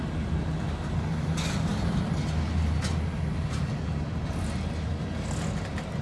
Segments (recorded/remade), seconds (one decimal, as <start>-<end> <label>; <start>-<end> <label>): 0.0-6.0 recorded